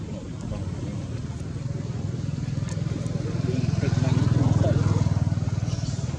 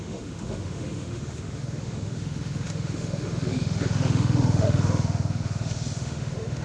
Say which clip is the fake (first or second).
second